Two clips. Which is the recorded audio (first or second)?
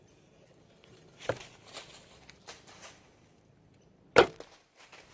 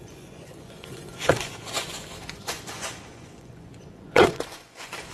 first